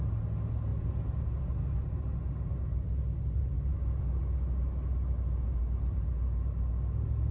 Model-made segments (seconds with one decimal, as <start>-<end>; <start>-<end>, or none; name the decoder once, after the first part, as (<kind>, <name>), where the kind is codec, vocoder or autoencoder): none